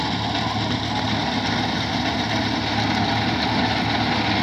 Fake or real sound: real